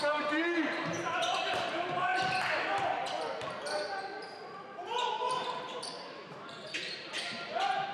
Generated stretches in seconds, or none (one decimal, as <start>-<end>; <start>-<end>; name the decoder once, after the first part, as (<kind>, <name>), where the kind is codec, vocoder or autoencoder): 0.0-2.1 (vocoder, BigVGAN v2); 5.6-7.9